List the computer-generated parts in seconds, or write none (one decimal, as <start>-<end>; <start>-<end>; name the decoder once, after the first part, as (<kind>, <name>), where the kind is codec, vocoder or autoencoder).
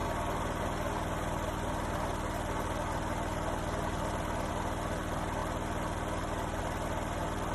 none